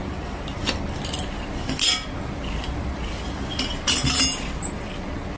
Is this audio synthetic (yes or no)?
no